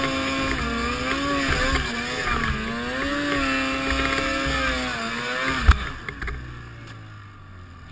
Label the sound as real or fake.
real